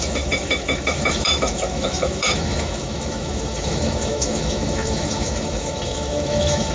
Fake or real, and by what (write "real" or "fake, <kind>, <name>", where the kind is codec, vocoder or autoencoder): fake, autoencoder, DAC-VAE